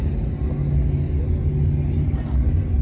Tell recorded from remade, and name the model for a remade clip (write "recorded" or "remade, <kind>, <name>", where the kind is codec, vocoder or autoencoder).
recorded